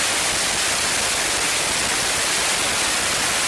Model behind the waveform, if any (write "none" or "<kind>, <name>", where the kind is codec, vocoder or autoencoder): none